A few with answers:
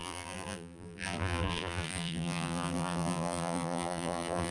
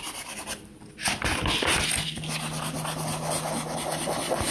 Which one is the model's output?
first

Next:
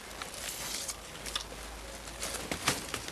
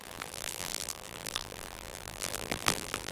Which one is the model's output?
second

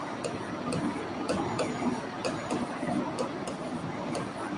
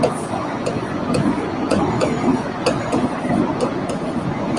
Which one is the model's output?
second